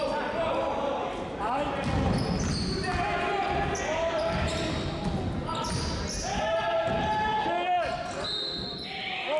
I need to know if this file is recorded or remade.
recorded